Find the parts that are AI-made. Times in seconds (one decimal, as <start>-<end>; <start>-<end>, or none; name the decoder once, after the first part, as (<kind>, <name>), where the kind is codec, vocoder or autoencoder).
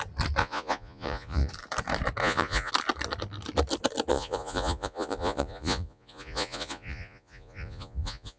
0.4-1.5 (vocoder, Vocos); 2.2-2.7; 4.1-8.4